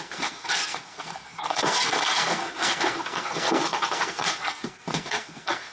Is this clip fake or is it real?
fake